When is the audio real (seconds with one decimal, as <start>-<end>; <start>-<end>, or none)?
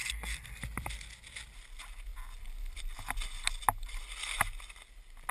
0.6-5.3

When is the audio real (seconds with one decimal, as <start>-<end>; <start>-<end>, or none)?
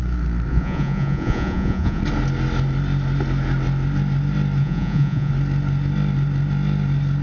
0.0-0.5; 2.0-4.6; 5.3-7.2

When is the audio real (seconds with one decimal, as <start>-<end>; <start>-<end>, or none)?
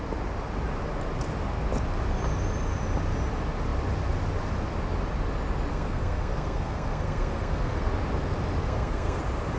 0.0-5.7; 7.9-8.6; 9.2-9.6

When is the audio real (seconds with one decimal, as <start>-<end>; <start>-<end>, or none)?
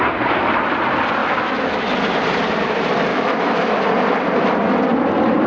0.0-1.2; 1.9-3.1; 3.7-5.5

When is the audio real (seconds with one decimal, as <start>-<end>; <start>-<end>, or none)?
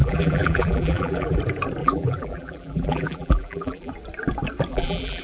1.4-1.8; 3.9-4.7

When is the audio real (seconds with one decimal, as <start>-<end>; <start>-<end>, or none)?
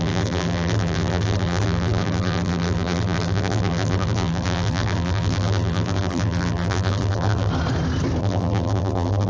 7.5-8.2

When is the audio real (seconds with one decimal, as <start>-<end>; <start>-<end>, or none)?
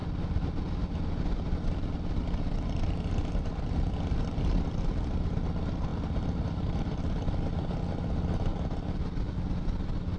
0.0-5.9; 7.8-8.5; 9.3-10.2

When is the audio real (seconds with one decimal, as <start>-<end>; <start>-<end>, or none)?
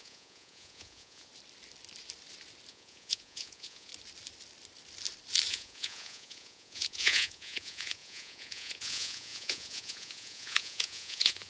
1.3-2.7; 3.9-5.5